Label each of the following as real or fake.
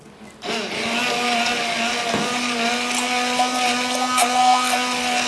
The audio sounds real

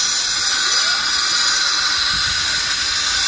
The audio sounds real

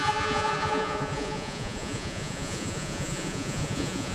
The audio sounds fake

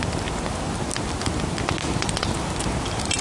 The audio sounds real